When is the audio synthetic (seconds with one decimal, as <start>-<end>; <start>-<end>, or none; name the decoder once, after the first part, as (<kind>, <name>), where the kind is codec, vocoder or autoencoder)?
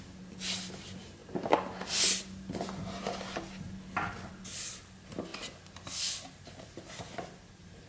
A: none